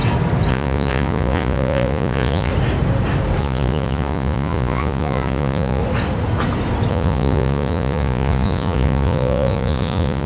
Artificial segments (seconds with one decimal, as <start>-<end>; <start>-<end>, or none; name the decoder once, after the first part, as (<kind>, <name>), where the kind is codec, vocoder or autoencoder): 0.5-2.5 (vocoder, Vocos); 3.4-5.8; 6.9-10.3